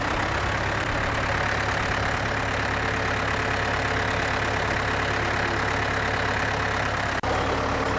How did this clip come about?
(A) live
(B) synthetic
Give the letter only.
A